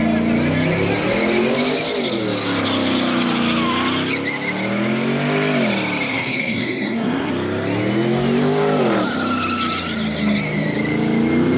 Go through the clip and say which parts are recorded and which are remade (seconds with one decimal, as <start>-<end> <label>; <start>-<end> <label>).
0.0-6.1 recorded; 6.1-7.3 remade; 7.3-11.6 recorded